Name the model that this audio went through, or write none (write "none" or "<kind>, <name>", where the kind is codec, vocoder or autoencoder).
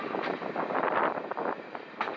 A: none